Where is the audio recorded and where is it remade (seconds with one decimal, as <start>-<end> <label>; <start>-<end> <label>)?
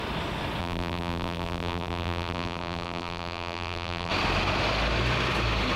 0.0-0.6 recorded; 0.6-4.1 remade; 4.1-5.8 recorded